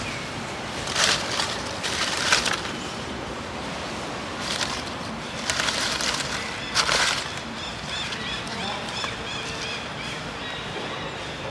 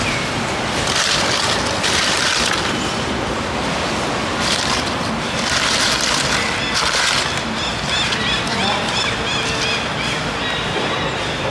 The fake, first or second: first